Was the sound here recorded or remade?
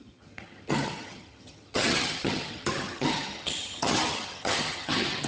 remade